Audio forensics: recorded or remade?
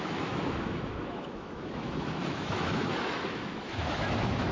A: remade